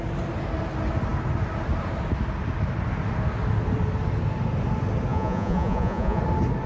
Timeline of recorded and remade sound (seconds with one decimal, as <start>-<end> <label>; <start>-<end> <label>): 0.0-5.1 recorded; 5.1-6.2 remade; 6.2-6.7 recorded